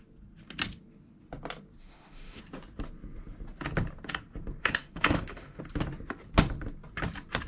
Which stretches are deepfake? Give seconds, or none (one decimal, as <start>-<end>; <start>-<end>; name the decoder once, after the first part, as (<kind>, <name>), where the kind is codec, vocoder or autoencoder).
1.8-2.4 (autoencoder, DAC-VAE); 4.6-5.6